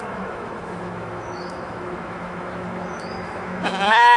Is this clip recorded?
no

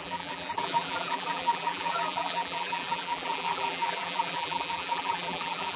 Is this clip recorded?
no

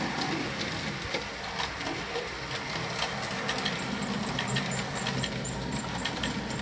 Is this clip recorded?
yes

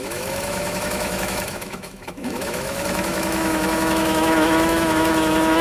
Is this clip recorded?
no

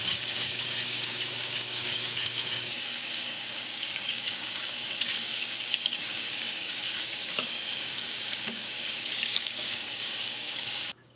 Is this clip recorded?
no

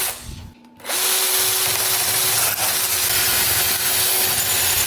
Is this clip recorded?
yes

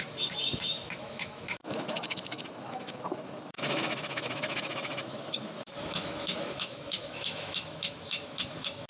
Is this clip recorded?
no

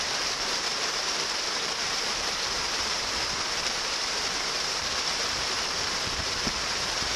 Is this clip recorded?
no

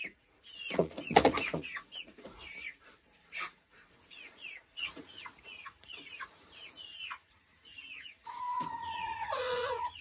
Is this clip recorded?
no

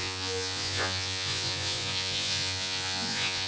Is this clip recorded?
no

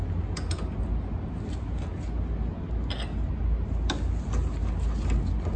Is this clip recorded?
yes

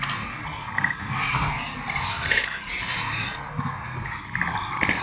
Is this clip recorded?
yes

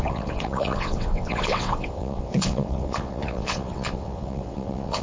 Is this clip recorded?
no